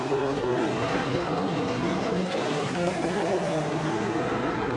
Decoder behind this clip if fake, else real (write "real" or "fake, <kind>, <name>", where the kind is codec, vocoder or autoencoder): fake, codec, SNAC